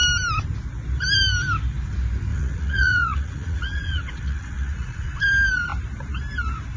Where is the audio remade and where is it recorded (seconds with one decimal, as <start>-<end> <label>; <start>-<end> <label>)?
0.0-2.3 recorded; 2.3-5.2 remade; 5.2-6.8 recorded